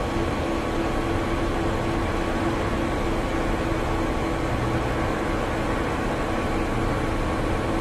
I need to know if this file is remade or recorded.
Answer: recorded